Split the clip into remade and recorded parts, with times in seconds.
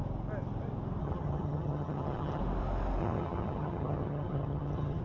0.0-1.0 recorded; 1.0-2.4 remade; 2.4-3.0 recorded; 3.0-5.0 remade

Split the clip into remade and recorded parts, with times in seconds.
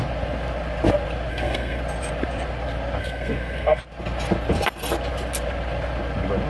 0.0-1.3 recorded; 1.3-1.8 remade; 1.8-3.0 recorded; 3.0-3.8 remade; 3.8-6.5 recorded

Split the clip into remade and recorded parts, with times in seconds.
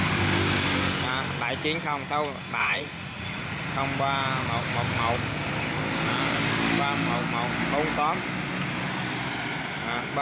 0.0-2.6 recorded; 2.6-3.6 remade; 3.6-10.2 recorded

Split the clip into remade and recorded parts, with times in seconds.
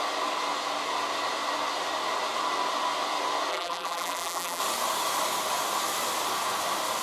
0.0-3.5 recorded; 3.5-4.6 remade; 4.6-7.0 recorded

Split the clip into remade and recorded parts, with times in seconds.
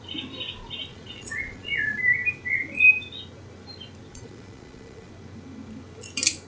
0.0-0.9 recorded; 0.9-2.0 remade; 2.0-4.1 recorded; 4.1-5.1 remade; 5.1-6.5 recorded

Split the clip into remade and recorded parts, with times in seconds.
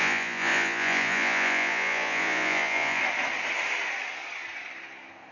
0.0-3.0 remade; 3.0-5.3 recorded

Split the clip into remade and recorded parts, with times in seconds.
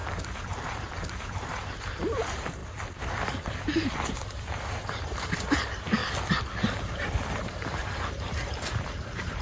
0.0-0.7 recorded; 0.7-2.6 remade; 2.6-4.1 recorded; 4.1-6.0 remade; 6.0-7.3 recorded; 7.3-9.4 remade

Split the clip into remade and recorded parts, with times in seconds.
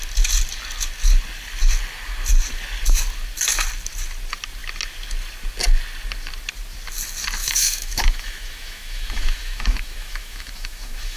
0.0-7.4 recorded; 7.4-11.2 remade